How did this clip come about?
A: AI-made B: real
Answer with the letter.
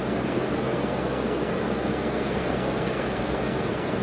A